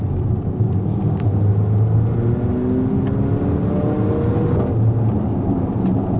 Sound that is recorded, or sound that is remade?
recorded